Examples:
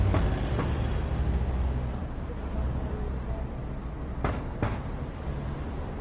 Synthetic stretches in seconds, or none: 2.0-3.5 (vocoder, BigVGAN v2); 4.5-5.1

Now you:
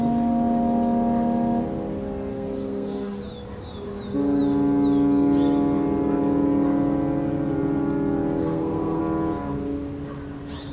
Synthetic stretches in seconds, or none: 2.3-3.2 (codec, SNAC); 8.4-9.0

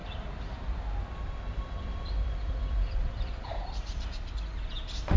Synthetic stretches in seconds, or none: 1.4-4.5 (vocoder, BigVGAN v2)

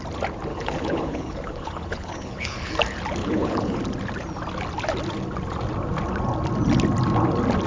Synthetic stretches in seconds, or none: 0.5-2.7 (codec, HILCodec); 3.2-3.8

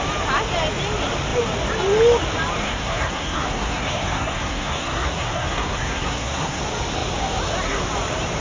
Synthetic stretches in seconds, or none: 2.6-6.6 (codec, SNAC)

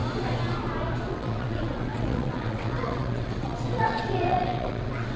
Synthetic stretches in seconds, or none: 1.1-5.2 (vocoder, WaveNeXt)